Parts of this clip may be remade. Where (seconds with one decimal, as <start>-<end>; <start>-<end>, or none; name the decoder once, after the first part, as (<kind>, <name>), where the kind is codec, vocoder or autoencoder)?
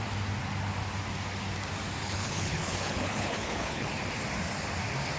2.0-3.9 (codec, HILCodec)